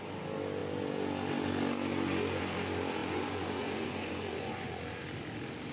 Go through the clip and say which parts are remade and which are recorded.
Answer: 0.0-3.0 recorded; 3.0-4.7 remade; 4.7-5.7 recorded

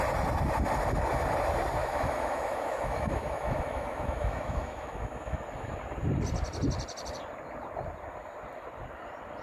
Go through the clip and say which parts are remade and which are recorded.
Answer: 0.0-1.8 recorded; 1.8-5.4 remade; 5.4-9.4 recorded